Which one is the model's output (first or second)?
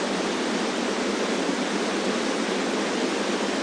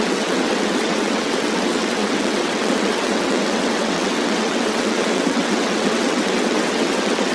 second